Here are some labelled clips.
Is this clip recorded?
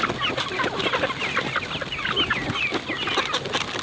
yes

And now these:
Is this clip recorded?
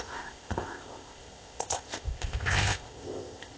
no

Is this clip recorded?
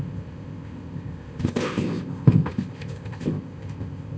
no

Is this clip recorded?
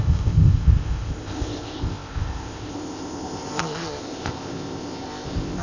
no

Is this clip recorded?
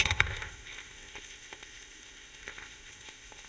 no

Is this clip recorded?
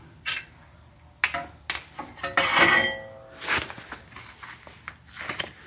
yes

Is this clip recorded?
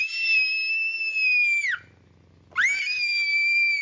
yes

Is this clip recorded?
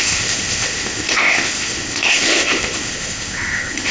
no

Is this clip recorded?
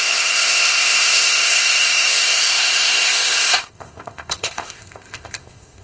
no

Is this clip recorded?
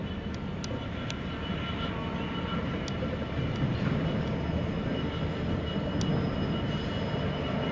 yes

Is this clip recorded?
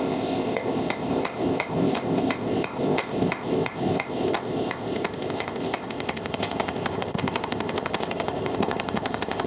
no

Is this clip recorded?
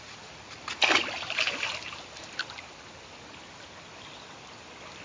yes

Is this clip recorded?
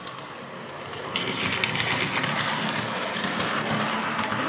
yes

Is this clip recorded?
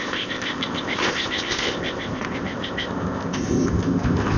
no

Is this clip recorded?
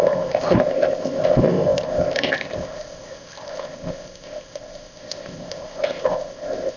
no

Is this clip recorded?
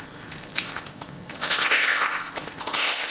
no